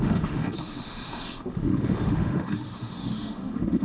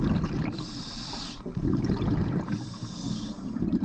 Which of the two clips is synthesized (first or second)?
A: first